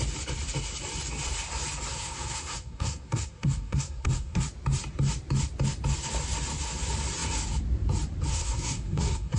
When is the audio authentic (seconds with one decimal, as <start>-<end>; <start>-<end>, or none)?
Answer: 0.0-1.9; 4.4-8.3